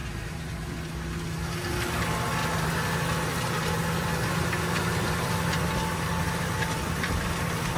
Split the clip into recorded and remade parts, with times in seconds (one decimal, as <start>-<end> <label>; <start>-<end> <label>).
0.0-7.8 recorded